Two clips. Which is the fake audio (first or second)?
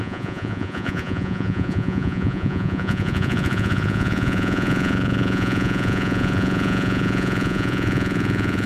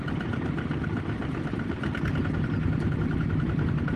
first